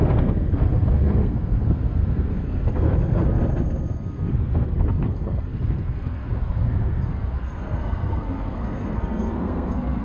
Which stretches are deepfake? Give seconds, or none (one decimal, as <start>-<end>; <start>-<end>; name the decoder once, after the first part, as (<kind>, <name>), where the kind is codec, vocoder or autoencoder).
0.0-10.0 (codec, SNAC)